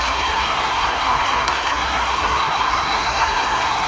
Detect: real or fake fake